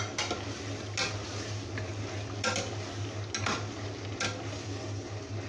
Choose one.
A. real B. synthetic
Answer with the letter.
A